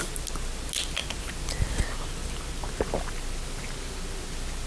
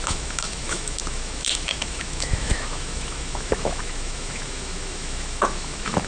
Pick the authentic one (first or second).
first